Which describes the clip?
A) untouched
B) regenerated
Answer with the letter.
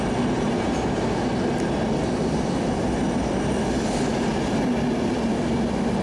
A